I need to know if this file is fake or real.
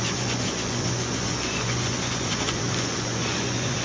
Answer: fake